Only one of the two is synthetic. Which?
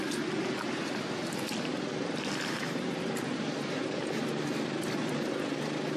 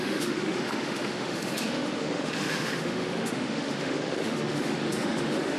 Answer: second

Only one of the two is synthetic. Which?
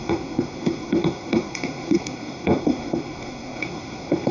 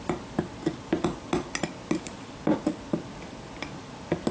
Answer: first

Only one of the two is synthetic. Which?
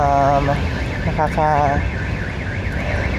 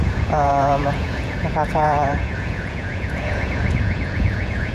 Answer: second